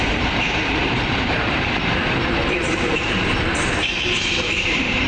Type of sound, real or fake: fake